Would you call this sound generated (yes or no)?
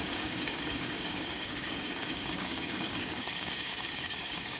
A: yes